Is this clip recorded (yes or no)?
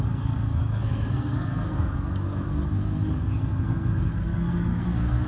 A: no